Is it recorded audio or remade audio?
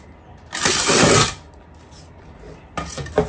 recorded